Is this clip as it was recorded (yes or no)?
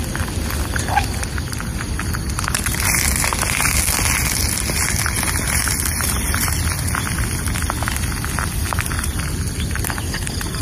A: yes